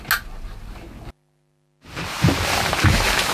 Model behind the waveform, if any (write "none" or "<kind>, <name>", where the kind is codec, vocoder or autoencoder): none